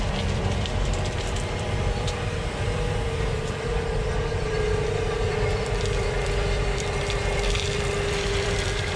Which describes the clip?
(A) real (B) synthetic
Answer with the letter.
B